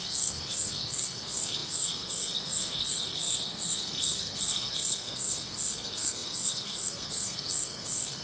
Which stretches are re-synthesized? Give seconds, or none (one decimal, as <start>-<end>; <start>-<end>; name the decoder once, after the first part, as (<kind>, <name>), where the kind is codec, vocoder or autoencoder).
0.0-8.2 (codec, SNAC)